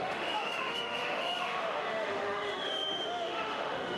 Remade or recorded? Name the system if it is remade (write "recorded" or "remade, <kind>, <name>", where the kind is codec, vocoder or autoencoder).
remade, autoencoder, DAC-VAE